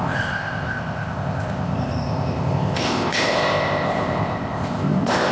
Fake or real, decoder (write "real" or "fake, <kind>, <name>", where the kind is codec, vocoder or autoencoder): fake, codec, ZipCodec